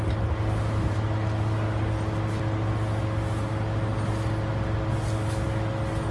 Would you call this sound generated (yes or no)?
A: no